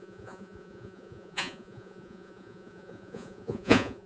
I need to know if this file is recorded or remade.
remade